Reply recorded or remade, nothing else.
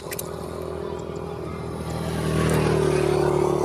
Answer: recorded